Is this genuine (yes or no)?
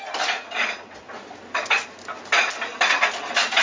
yes